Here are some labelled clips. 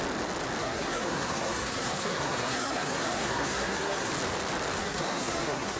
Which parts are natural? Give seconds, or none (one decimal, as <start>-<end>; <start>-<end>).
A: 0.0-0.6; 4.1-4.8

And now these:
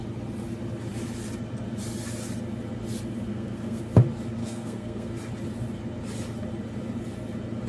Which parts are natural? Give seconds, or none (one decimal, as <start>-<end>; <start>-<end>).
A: 0.0-3.3; 3.8-4.4; 5.1-7.7

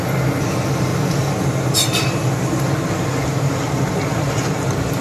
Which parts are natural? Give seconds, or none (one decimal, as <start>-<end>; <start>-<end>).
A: 0.0-5.0

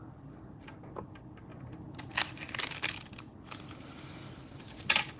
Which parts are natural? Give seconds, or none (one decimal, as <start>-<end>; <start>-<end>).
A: 0.0-5.2